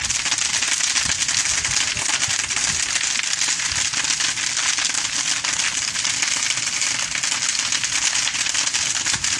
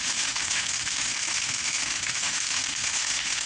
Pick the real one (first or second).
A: first